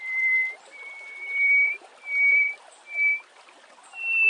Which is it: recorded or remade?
remade